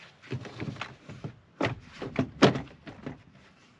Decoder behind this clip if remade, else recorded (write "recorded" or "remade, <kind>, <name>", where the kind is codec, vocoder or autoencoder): recorded